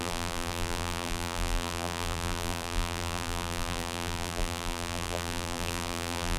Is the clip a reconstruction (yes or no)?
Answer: yes